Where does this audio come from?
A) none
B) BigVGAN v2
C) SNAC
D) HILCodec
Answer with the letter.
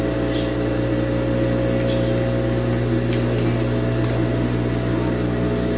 A